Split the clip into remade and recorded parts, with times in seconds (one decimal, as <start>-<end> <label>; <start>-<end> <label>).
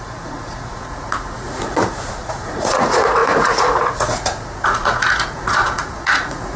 0.0-6.6 remade